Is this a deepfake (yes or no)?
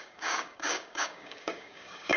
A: yes